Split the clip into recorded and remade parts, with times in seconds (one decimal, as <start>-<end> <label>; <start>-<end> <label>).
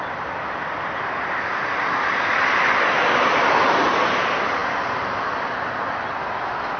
0.0-6.8 recorded